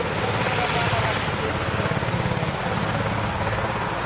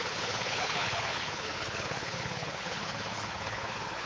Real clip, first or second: first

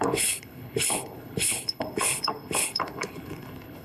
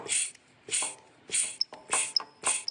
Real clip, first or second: second